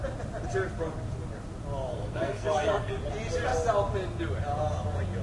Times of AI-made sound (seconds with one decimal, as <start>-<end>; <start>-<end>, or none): 1.9-2.9